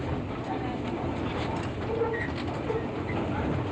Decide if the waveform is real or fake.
real